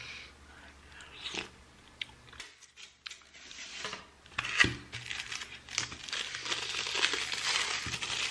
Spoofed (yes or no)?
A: no